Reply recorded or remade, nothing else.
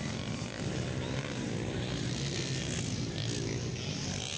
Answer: recorded